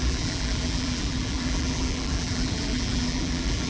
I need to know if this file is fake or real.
fake